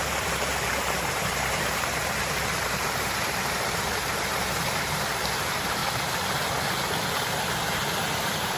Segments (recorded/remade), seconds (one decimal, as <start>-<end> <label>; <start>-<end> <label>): 0.0-0.5 remade; 0.5-1.2 recorded; 1.2-5.8 remade; 5.8-7.7 recorded; 7.7-8.6 remade